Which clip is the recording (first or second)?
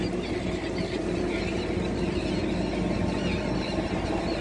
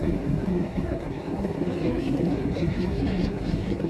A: first